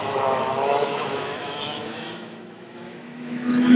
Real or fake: fake